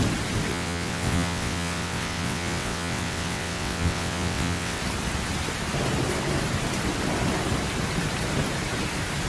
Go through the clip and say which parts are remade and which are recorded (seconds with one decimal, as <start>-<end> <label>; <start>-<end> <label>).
0.0-0.5 recorded; 0.5-4.8 remade; 4.8-9.3 recorded